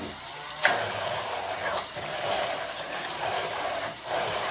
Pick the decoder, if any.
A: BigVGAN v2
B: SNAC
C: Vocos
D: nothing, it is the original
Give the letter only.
A